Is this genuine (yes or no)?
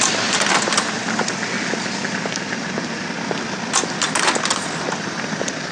yes